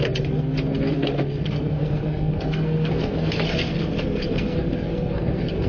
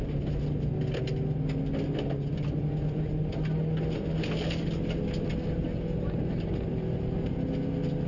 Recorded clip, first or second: second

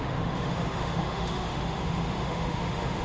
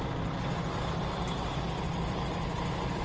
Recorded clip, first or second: second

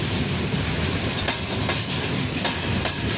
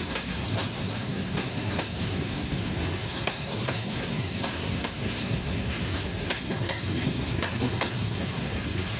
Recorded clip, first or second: first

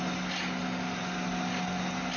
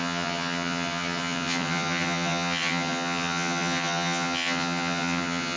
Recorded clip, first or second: first